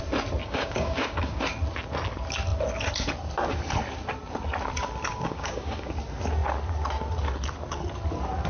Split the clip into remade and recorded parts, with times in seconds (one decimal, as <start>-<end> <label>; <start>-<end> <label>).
0.0-0.4 recorded; 0.4-1.5 remade; 1.5-5.1 recorded; 5.1-5.9 remade; 5.9-8.5 recorded